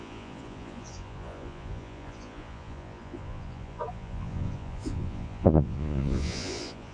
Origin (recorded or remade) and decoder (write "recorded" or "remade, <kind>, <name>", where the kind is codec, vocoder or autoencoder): remade, vocoder, Vocos